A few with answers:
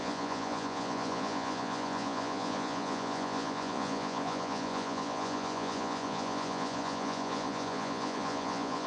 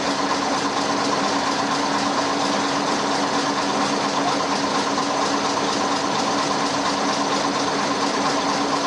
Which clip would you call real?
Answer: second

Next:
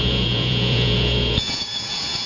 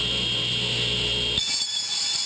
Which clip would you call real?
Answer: second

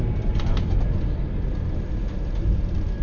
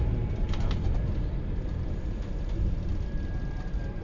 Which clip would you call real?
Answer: first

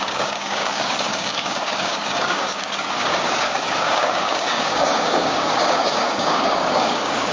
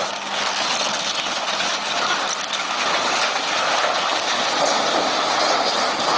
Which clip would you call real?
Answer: second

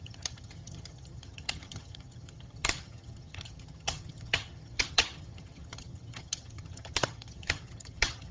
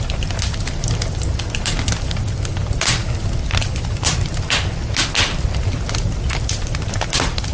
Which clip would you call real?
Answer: second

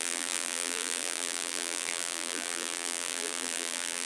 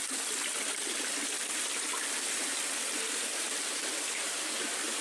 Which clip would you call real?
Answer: second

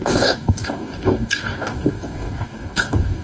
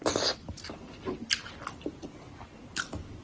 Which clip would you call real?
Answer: second